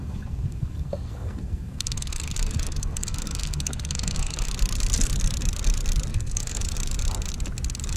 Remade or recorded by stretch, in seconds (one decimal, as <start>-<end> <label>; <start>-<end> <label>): 0.0-4.5 remade; 4.5-6.1 recorded; 6.1-6.6 remade; 6.6-8.0 recorded